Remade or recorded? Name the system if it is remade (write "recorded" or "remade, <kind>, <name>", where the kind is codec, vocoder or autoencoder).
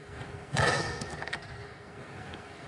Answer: remade, codec, SNAC